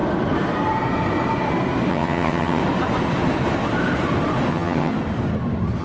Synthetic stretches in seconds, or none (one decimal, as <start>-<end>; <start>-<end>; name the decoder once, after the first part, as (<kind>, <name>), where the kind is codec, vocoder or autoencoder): 1.9-2.6 (vocoder, HiFi-GAN); 4.5-4.9